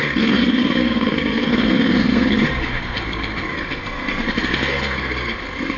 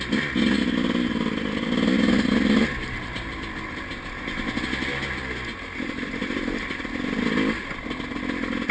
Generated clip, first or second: first